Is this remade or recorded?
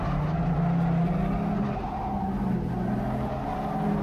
recorded